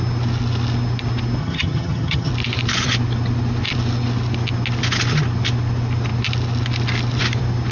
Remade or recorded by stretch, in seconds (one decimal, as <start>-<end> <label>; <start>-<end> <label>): 0.0-1.4 recorded; 1.4-2.3 remade; 2.3-7.7 recorded